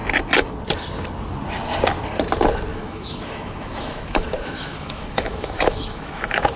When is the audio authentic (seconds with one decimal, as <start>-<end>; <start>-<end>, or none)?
0.0-2.7